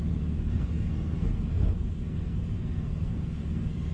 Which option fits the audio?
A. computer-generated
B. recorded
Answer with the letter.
A